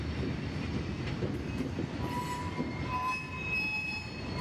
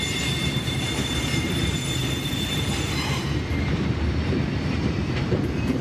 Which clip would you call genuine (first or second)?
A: first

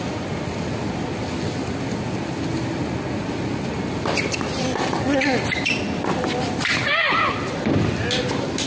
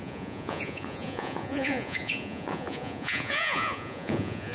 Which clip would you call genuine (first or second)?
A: first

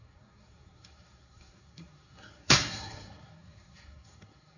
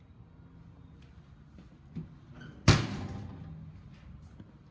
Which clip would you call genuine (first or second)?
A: second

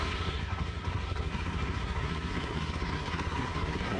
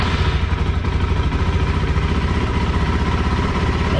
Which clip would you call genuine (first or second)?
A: second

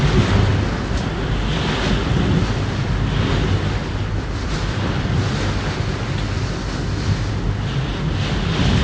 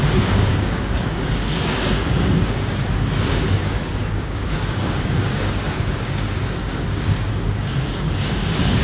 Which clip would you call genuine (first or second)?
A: first